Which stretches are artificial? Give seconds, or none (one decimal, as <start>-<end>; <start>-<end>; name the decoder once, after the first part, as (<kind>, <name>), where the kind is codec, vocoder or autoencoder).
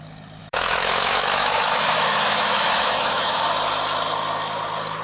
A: 0.4-3.4 (autoencoder, DAC-VAE)